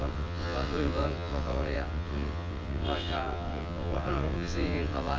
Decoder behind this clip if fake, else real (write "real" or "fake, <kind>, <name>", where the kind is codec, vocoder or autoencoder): fake, vocoder, WaveNeXt